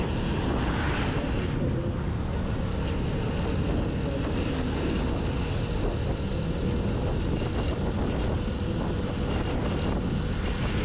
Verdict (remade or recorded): recorded